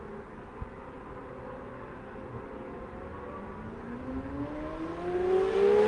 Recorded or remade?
recorded